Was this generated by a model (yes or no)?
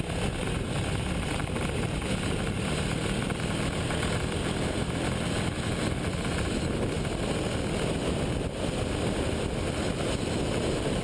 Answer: no